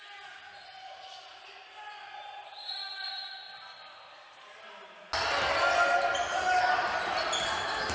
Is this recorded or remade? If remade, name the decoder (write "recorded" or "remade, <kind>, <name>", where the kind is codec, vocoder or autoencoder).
recorded